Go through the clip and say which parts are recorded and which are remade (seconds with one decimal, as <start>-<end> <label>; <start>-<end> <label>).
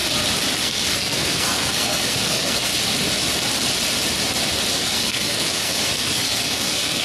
0.0-0.6 recorded; 0.6-2.7 remade; 2.7-4.7 recorded; 4.7-7.0 remade